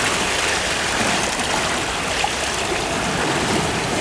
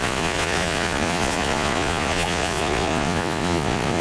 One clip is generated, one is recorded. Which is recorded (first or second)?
first